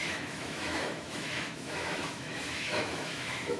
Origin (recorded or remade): remade